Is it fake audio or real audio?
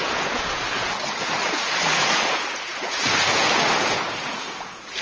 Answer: fake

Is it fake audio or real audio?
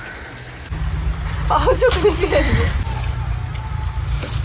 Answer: real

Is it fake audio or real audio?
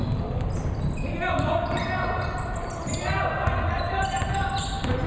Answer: real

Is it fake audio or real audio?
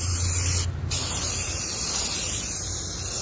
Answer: real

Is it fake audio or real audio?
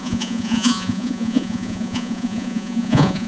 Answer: fake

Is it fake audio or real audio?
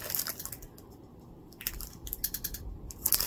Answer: real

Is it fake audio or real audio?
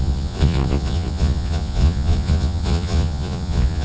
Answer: fake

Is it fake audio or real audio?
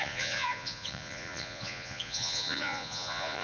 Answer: fake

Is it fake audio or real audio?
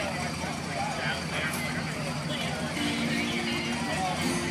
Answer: real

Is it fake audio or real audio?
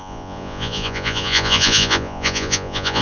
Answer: fake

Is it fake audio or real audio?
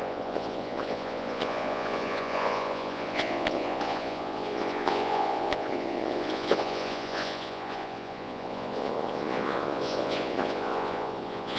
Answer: fake